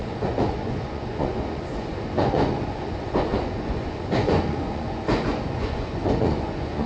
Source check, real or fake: fake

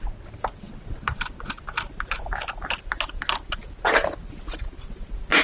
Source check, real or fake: real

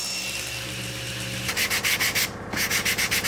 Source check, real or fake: real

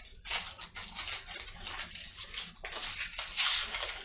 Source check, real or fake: real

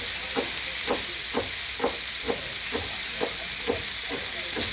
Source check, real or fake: real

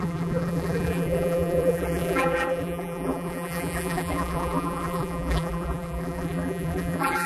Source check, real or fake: fake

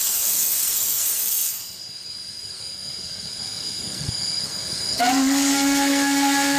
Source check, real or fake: fake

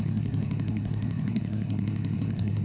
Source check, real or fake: fake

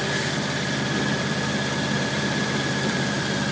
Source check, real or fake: real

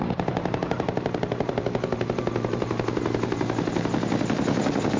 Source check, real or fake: real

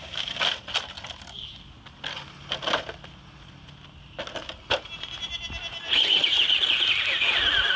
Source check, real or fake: real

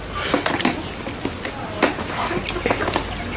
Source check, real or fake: real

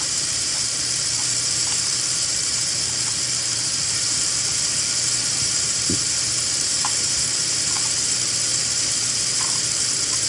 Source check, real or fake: fake